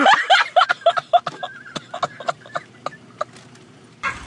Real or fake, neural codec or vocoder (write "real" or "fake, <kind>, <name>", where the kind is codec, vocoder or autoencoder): real